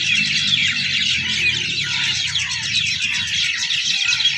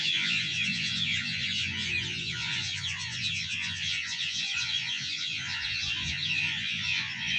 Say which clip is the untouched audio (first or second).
first